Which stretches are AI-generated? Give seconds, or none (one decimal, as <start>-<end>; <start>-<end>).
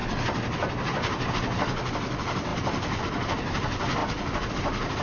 none